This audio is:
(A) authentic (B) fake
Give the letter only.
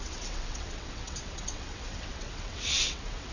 B